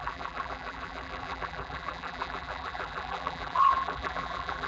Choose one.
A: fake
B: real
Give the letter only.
A